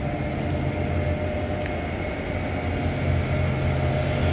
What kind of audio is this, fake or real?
real